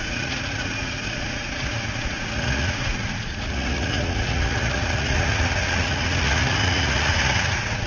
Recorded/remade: remade